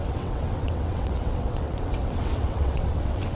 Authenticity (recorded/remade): remade